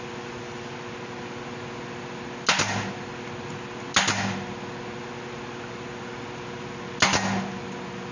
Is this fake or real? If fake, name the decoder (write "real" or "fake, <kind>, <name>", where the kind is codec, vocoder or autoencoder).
real